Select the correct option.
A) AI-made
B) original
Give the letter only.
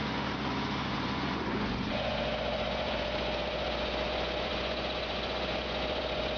A